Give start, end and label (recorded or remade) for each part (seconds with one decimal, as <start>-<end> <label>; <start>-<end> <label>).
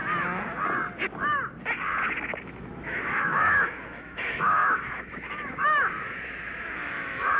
0.0-2.4 recorded; 2.4-7.4 remade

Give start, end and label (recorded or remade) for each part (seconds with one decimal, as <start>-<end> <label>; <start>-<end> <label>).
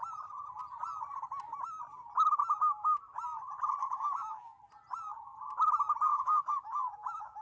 0.0-3.8 recorded; 3.8-4.6 remade; 4.6-6.1 recorded; 6.1-7.4 remade